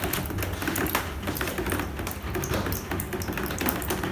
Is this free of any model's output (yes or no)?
yes